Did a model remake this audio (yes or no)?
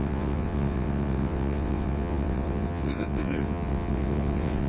yes